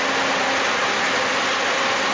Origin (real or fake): real